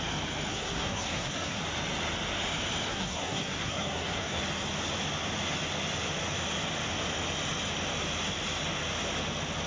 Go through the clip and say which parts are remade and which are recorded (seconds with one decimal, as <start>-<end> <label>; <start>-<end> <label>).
0.0-0.5 recorded; 0.5-1.6 remade; 1.6-2.9 recorded; 2.9-4.4 remade; 4.4-9.7 recorded